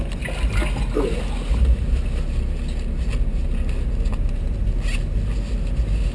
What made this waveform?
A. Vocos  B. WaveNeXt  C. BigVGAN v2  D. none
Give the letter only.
D